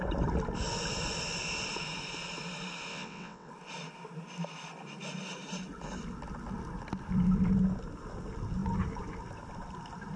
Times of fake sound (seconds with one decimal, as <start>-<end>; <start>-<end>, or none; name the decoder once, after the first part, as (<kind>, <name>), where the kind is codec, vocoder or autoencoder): 2.9-3.5 (vocoder, WaveNeXt)